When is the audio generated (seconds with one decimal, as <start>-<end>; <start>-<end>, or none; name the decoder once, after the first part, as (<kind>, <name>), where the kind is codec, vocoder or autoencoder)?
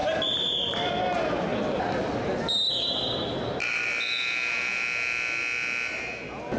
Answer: 1.5-5.4 (vocoder, BigVGAN v2)